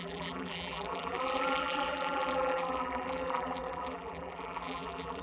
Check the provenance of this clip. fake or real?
fake